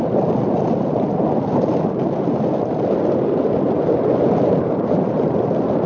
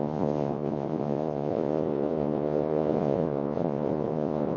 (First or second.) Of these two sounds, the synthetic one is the second